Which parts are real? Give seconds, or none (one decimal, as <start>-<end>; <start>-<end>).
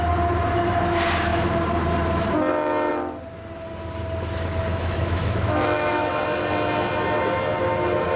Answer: 0.0-4.7; 6.1-8.2